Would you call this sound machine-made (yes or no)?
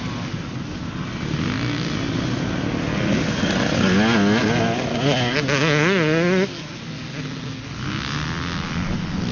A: no